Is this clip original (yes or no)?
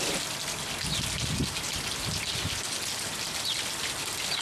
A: yes